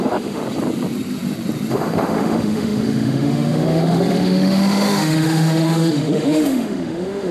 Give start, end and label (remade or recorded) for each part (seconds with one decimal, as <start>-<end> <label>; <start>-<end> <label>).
0.0-0.4 remade; 0.4-1.7 recorded; 1.7-7.3 remade